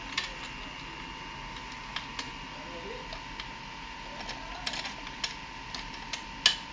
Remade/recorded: recorded